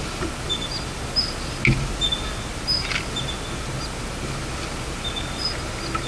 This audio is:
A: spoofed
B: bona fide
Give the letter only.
B